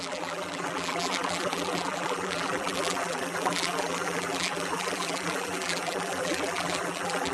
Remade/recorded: remade